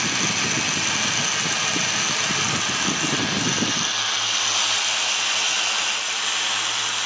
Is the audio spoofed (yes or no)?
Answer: no